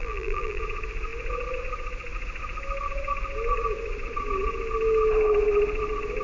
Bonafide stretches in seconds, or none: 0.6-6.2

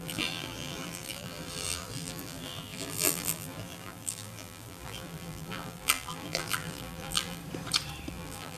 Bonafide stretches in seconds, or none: 7.4-8.1